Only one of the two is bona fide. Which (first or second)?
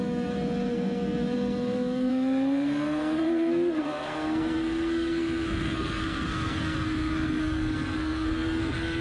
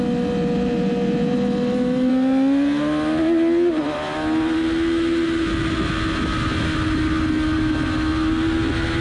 second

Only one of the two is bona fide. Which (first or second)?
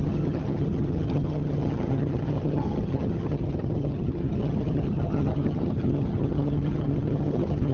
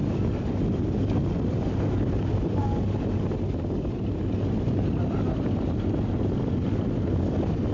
second